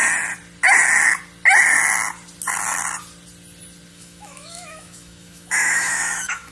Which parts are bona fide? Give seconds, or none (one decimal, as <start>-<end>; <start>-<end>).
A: 0.0-3.9